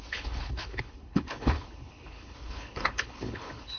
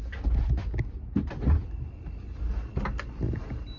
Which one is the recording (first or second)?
second